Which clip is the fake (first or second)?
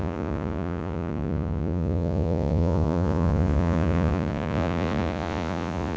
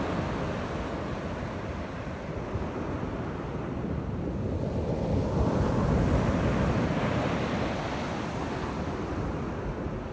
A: first